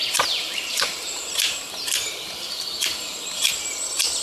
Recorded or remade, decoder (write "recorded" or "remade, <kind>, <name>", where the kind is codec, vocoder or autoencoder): remade, vocoder, BigVGAN v2